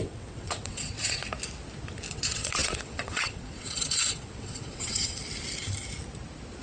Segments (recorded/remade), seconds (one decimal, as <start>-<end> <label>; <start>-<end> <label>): 0.0-1.2 remade; 1.2-2.1 recorded; 2.1-5.2 remade; 5.2-6.6 recorded